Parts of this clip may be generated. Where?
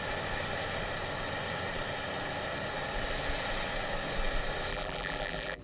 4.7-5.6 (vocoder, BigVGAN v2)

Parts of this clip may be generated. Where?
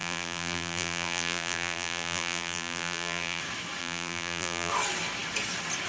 0.0-3.4 (vocoder, BigVGAN v2); 3.8-4.7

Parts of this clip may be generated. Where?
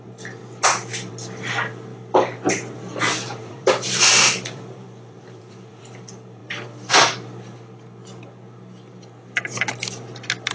3.4-5.8 (vocoder, BigVGAN v2)